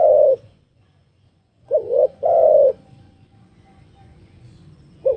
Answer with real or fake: fake